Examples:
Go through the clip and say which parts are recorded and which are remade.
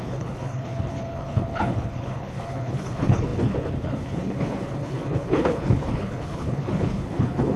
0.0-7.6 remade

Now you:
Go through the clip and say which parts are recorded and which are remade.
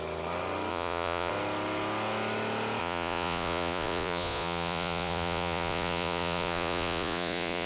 0.0-0.7 recorded; 0.7-1.3 remade; 1.3-2.8 recorded; 2.8-7.7 remade